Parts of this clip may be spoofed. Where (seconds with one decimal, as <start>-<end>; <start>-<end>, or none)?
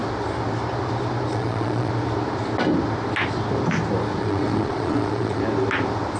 1.3-1.9; 4.2-5.4